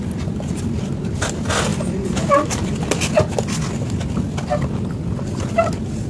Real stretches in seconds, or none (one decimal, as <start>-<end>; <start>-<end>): 0.0-6.1